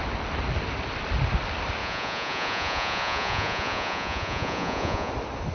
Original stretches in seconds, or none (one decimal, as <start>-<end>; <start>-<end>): 0.0-1.8; 5.1-5.5